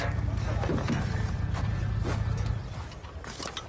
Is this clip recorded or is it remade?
recorded